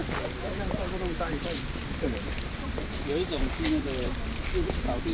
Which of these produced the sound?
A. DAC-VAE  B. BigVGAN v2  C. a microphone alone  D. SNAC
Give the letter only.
C